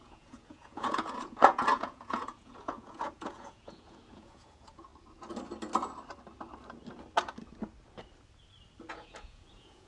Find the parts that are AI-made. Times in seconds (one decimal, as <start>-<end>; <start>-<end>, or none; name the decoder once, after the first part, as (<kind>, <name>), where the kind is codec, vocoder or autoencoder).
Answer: 0.0-4.9 (vocoder, Vocos); 8.9-9.9